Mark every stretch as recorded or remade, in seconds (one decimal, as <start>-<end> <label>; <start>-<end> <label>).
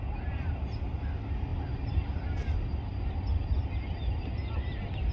0.0-5.1 recorded